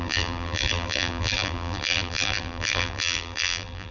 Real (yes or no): no